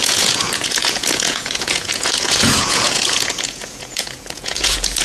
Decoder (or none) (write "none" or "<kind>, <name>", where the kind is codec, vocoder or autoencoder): vocoder, Vocos